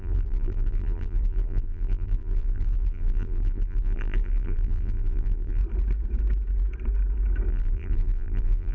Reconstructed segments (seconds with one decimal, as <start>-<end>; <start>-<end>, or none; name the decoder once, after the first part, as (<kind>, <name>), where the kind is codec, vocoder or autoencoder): 0.0-5.6 (vocoder, BigVGAN v2); 7.5-8.7